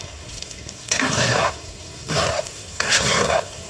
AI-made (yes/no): yes